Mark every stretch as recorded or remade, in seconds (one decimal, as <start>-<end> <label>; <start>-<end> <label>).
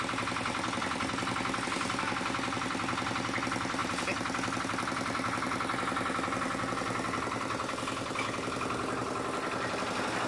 0.0-10.3 recorded